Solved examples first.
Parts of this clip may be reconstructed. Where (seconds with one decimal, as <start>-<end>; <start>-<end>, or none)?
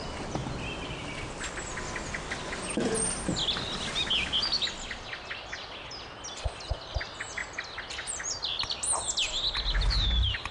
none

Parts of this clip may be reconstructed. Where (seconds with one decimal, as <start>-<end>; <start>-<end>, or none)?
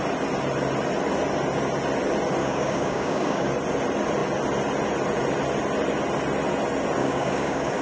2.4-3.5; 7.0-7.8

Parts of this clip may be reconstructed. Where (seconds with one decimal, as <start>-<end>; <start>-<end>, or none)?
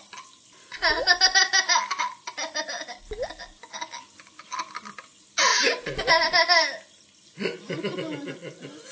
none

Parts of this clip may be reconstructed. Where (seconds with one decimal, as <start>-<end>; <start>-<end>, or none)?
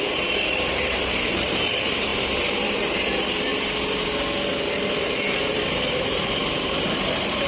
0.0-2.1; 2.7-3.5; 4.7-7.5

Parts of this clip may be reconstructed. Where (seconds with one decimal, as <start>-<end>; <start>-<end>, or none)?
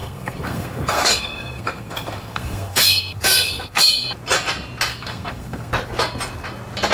0.0-3.8; 4.9-5.7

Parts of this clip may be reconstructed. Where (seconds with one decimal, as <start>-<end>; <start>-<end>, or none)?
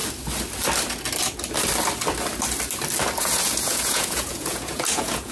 3.2-5.3